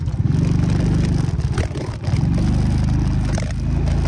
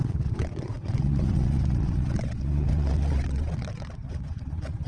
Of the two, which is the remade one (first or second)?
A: second